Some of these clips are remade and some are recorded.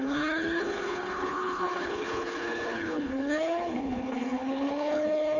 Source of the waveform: remade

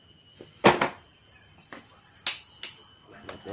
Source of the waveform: recorded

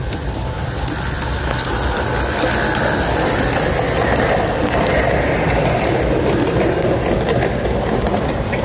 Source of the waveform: recorded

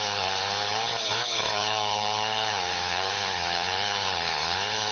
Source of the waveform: remade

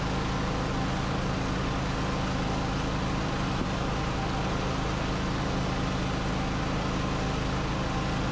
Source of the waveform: recorded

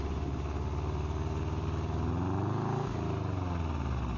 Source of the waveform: recorded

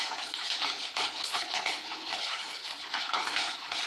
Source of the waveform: remade